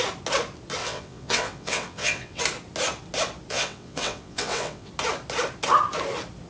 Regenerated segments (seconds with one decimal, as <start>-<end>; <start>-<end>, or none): 0.8-2.4; 3.5-4.9